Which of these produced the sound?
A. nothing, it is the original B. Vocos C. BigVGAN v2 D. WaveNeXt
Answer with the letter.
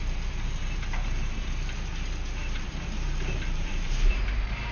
C